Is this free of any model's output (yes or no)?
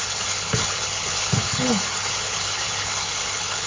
no